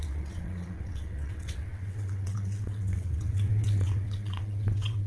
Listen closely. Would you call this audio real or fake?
fake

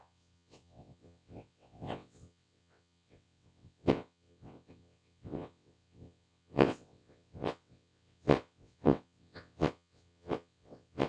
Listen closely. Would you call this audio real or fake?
fake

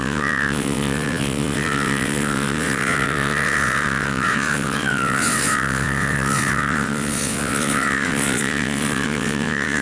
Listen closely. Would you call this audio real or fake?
fake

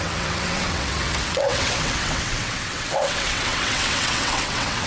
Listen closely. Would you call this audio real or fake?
fake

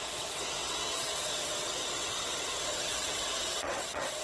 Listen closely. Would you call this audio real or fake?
fake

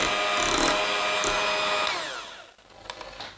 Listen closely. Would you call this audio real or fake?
real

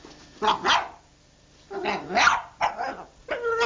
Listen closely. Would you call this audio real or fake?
real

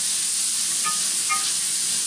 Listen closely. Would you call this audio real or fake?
real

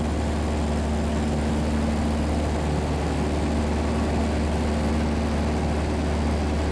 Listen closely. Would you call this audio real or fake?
real